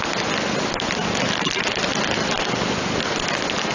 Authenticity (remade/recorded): recorded